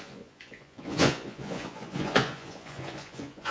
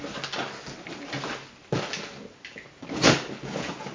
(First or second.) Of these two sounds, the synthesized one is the first